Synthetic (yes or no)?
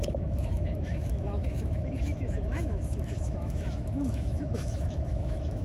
yes